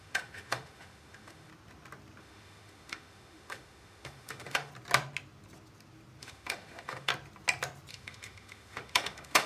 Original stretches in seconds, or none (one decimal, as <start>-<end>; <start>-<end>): 1.5-2.2; 4.7-6.2; 7.1-7.9